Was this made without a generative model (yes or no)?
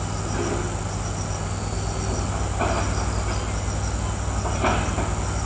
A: yes